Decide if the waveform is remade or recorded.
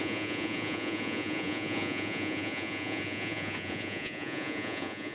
remade